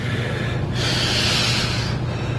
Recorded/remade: recorded